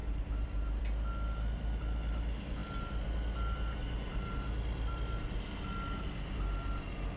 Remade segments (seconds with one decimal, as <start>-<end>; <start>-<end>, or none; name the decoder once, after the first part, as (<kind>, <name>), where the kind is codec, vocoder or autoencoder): 0.0-0.8 (vocoder, BigVGAN v2)